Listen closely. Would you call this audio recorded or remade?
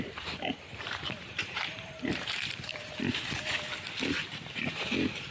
remade